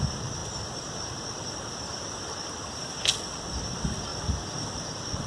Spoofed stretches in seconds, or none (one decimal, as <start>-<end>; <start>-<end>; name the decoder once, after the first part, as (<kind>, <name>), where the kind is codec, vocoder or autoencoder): none